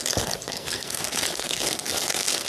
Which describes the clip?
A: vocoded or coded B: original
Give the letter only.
A